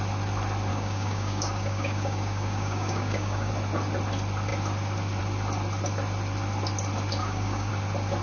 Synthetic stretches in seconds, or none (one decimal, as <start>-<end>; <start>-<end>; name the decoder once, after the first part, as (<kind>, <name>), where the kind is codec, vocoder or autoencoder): 0.7-3.5 (codec, DAC); 7.2-7.7